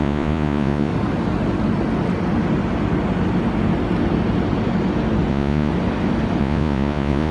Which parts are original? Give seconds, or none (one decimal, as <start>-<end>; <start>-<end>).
0.9-5.3; 5.7-6.4